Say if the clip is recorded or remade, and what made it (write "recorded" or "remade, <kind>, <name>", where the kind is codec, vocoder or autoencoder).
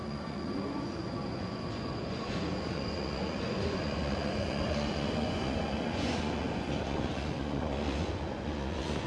remade, vocoder, Vocos